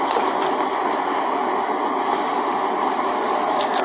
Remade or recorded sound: recorded